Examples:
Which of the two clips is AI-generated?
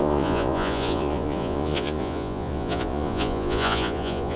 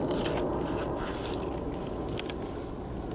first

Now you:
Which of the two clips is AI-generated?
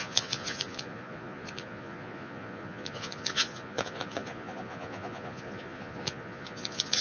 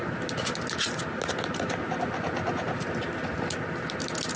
first